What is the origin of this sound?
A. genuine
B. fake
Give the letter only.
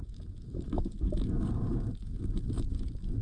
B